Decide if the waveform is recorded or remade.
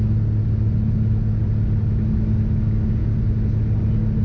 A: recorded